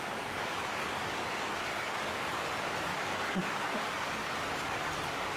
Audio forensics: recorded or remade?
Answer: remade